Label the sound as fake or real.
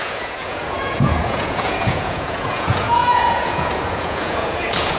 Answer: fake